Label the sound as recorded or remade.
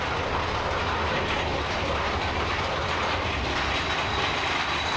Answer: recorded